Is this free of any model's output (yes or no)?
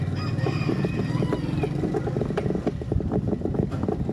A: yes